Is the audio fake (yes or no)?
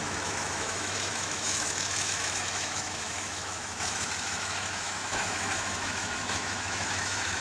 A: yes